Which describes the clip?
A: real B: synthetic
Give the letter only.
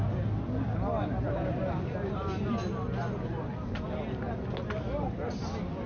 A